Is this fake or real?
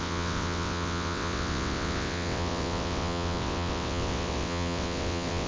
fake